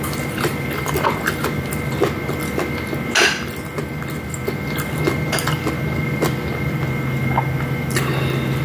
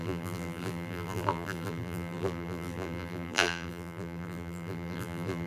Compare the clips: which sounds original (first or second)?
first